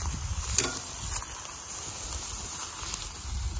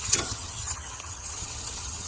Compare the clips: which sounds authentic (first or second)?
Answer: first